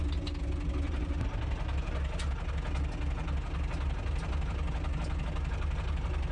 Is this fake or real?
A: real